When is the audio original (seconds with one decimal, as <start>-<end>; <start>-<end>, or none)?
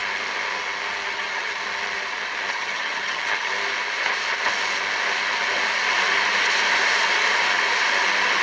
0.0-1.1; 1.6-2.5; 3.5-8.4